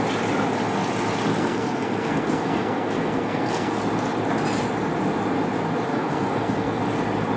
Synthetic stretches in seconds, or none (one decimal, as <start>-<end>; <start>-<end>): 1.4-3.8; 5.9-6.8